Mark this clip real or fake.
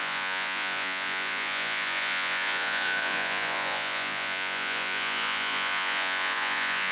fake